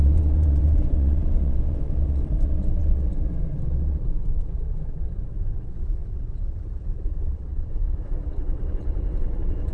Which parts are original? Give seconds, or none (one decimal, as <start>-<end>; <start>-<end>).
none

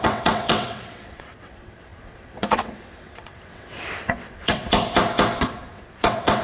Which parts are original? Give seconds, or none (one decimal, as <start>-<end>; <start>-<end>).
4.6-5.4

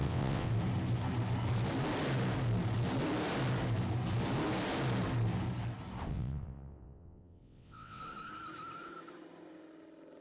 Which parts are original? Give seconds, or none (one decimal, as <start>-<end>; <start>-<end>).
0.5-6.1; 8.0-10.2

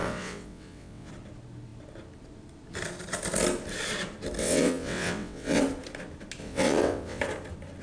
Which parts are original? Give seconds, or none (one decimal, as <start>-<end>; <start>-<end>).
1.1-4.4; 5.6-6.4; 7.2-7.8

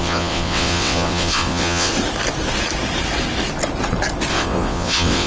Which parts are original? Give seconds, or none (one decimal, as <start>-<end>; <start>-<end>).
1.9-4.3

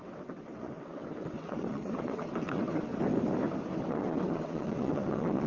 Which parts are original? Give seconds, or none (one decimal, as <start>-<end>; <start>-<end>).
2.9-3.9

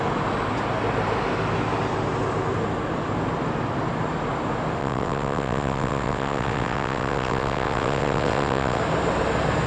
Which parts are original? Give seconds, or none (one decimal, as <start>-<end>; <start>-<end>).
0.0-4.8; 8.8-9.7

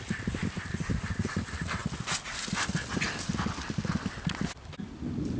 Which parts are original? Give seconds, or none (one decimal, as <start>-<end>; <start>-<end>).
0.0-5.4